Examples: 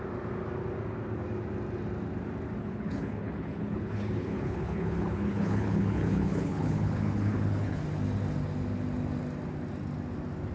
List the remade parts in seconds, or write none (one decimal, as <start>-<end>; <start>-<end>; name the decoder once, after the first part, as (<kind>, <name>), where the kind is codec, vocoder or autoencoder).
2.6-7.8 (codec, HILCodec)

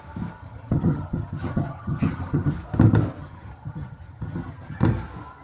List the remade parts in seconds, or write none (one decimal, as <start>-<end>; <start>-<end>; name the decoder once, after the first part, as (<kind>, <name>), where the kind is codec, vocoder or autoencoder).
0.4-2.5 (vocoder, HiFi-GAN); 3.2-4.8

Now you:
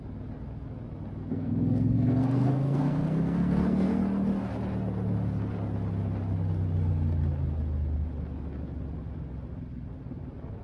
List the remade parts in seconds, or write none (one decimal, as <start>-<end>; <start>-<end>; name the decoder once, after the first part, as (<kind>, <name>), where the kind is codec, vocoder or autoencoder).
1.3-4.0 (codec, SNAC)